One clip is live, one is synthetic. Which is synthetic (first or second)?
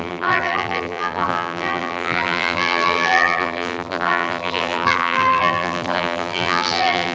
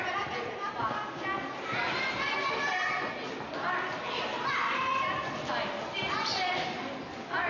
first